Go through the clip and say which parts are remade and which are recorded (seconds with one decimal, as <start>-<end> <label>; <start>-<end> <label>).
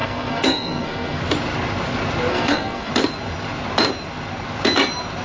0.0-1.2 remade; 1.2-2.3 recorded; 2.3-2.9 remade; 2.9-5.2 recorded